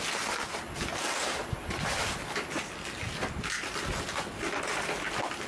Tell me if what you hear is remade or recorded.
recorded